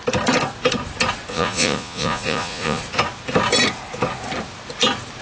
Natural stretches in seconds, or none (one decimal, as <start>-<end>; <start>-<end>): 0.0-1.3; 2.8-5.2